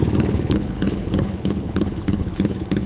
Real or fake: fake